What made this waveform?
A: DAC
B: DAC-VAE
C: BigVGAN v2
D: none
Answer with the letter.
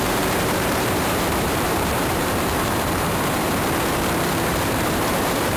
C